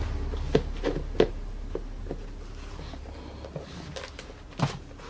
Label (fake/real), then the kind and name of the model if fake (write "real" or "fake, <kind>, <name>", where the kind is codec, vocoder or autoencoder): real